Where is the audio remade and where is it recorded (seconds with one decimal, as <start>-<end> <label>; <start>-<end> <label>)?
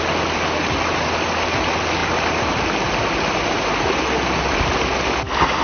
0.0-5.6 recorded